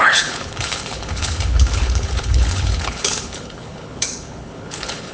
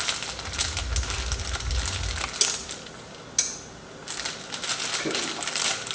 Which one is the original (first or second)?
second